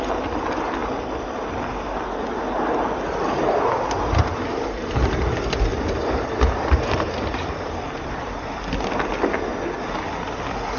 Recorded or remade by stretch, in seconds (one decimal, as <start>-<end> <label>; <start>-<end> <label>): 0.0-4.5 recorded; 4.5-5.2 remade; 5.2-5.7 recorded; 5.7-8.5 remade; 8.5-10.8 recorded